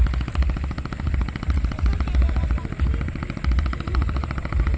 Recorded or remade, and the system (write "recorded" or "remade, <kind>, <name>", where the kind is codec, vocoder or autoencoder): recorded